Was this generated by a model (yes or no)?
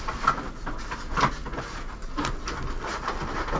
no